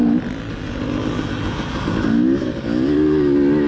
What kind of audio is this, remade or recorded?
recorded